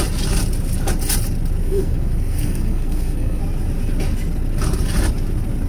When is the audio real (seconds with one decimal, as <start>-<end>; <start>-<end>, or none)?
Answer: 0.0-1.6; 3.4-5.7